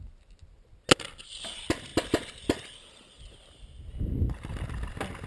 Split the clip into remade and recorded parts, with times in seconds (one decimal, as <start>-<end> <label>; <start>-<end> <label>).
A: 0.0-5.3 recorded